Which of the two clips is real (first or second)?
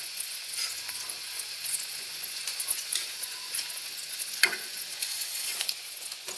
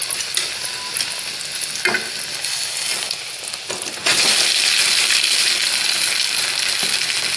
second